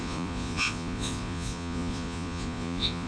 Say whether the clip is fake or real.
fake